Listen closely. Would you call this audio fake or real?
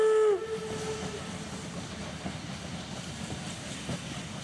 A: real